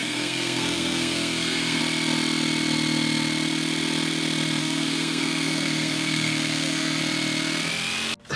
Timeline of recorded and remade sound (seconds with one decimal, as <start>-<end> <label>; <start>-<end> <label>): 0.0-1.8 remade; 1.8-4.6 recorded; 4.6-7.0 remade; 7.0-8.4 recorded

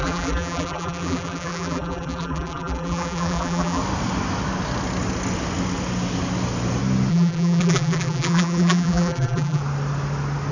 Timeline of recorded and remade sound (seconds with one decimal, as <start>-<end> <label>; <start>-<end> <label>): 0.0-3.8 remade; 3.8-7.1 recorded; 7.1-9.6 remade; 9.6-10.5 recorded

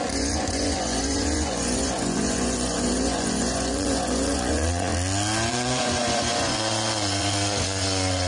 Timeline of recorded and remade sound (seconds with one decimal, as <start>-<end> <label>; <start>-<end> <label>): 0.0-4.9 remade; 4.9-5.5 recorded; 5.5-8.3 remade

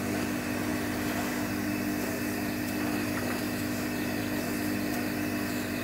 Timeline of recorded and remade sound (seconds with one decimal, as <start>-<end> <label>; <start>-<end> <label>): 0.0-5.8 recorded

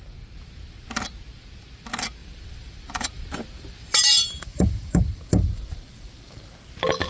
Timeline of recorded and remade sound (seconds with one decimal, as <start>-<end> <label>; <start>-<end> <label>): 0.0-2.2 recorded; 2.2-6.5 remade; 6.5-7.1 recorded

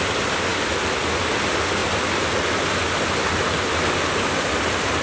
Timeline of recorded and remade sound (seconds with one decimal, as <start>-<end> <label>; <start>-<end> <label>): 0.0-5.0 recorded

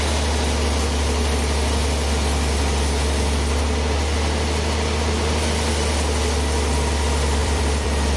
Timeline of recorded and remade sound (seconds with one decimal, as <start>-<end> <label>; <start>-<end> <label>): 0.0-7.4 recorded; 7.4-8.2 remade

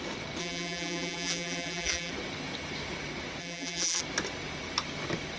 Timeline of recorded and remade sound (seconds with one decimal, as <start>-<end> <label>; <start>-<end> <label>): 0.0-0.4 recorded; 0.4-2.1 remade; 2.1-3.4 recorded; 3.4-4.0 remade; 4.0-5.4 recorded